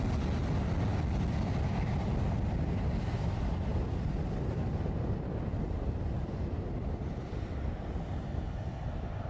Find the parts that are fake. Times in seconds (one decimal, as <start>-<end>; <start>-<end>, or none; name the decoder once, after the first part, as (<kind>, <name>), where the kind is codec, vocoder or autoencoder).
none